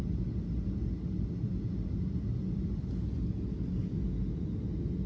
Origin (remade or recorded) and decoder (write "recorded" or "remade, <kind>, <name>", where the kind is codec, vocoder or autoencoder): recorded